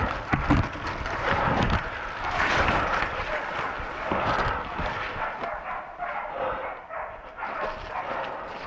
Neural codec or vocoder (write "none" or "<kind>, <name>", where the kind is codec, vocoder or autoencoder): none